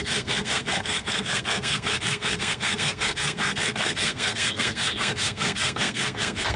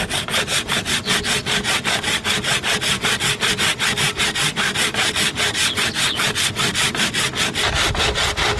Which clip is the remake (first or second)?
first